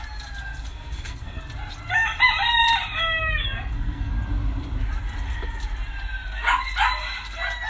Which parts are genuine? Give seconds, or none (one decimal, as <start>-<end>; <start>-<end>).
0.0-0.7; 1.4-3.2; 4.1-7.7